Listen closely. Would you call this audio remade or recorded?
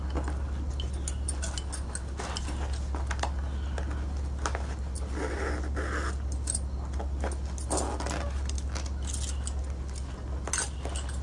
recorded